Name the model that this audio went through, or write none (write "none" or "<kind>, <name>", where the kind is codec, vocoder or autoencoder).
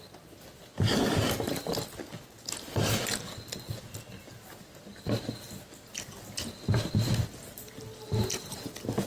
none